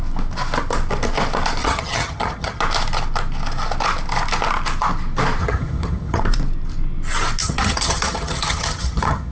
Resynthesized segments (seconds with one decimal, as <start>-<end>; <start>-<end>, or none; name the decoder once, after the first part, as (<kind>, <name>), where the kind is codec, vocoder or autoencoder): 1.6-2.6 (vocoder, HiFi-GAN); 5.4-6.2; 7.4-9.3